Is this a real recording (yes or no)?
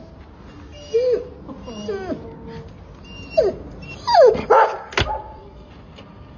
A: yes